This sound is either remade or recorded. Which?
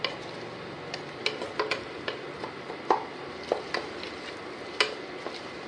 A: recorded